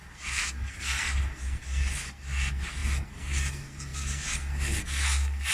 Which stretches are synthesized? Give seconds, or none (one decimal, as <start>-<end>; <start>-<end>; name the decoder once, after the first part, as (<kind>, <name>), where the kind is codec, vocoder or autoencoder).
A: 0.0-5.5 (codec, SNAC)